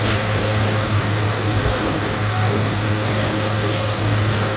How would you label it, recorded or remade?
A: remade